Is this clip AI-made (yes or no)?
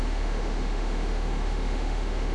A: yes